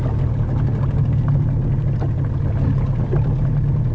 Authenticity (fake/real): real